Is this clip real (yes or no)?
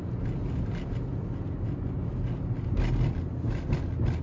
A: yes